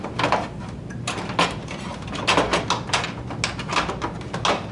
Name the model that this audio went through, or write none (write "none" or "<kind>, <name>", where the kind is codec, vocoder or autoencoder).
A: none